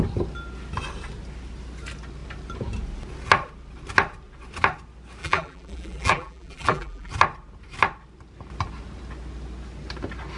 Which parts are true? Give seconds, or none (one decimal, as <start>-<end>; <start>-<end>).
0.0-5.2; 7.1-10.4